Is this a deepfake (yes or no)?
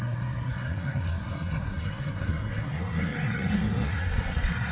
yes